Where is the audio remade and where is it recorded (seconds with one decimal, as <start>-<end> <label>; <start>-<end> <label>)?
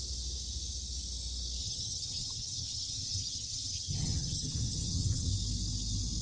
0.0-1.6 recorded; 1.6-5.3 remade; 5.3-6.2 recorded